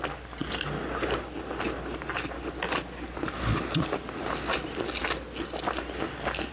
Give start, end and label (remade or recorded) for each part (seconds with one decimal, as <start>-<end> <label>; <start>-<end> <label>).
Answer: 0.0-6.5 recorded